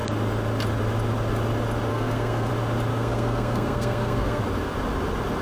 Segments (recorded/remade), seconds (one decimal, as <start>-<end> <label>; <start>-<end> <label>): 0.0-1.9 recorded; 1.9-2.5 remade; 2.5-2.9 recorded; 2.9-4.4 remade; 4.4-5.4 recorded